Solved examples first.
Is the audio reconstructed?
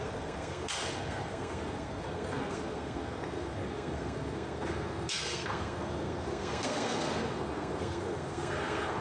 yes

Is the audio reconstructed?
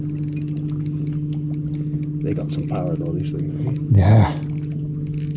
no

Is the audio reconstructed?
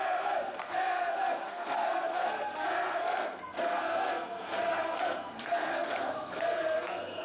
yes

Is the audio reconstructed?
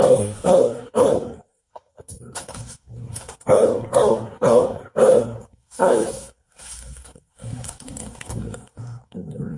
yes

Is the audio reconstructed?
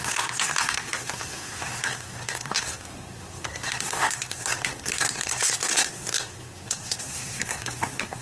yes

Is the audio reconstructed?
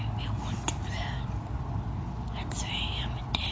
no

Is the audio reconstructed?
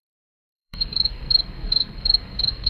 yes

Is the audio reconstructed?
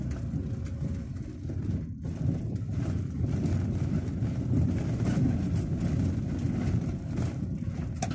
no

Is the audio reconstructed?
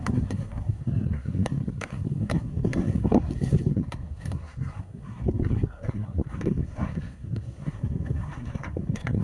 yes